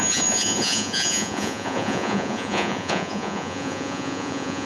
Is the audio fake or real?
fake